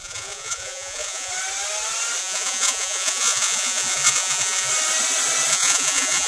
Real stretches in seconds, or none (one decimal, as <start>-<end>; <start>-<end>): 1.3-2.2; 4.7-5.5